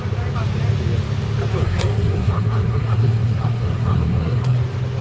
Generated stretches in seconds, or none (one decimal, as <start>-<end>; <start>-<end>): 1.6-4.6

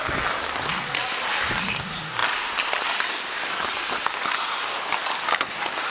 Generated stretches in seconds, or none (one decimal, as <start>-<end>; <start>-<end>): none

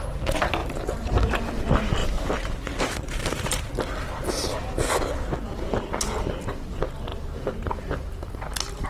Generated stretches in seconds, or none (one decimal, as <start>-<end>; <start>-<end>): 0.6-1.4; 2.0-3.7